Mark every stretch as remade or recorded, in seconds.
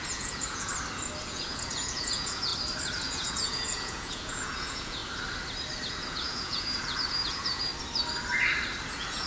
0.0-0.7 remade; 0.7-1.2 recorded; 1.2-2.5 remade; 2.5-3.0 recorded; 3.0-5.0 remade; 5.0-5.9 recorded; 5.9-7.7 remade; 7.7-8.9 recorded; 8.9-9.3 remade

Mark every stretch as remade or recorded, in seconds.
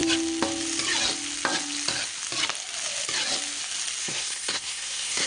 0.0-4.0 recorded; 4.0-5.3 remade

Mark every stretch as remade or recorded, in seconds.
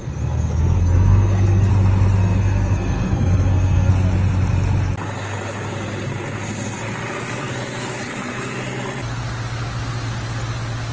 0.0-1.7 remade; 1.7-2.2 recorded; 2.2-3.9 remade; 3.9-10.9 recorded